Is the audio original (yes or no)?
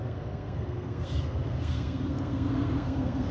no